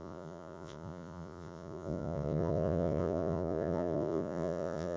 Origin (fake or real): fake